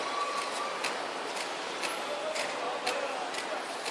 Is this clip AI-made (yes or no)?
no